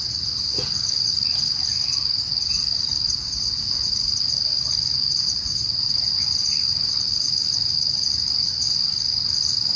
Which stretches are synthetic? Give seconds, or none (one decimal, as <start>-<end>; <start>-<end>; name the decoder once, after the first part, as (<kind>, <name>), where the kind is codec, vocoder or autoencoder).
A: none